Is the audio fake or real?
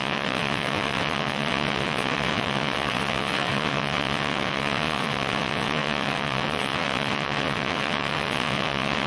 fake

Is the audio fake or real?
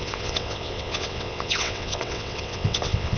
fake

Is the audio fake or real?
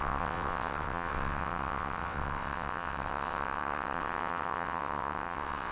fake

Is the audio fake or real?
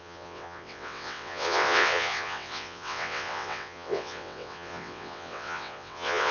fake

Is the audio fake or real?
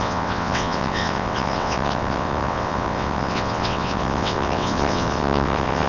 fake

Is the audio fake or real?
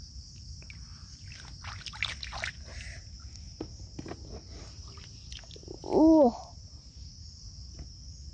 real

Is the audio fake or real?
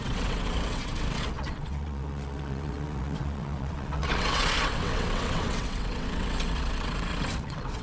fake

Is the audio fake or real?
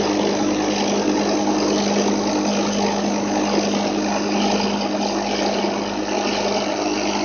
real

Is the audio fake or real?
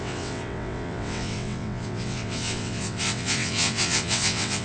fake